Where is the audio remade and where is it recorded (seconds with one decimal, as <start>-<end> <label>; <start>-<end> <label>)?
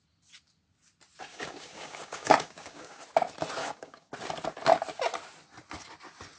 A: 0.0-1.3 recorded; 1.3-3.0 remade; 3.0-3.6 recorded; 3.6-4.1 remade; 4.1-6.4 recorded